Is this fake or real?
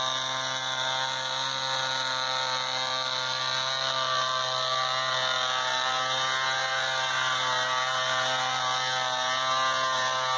real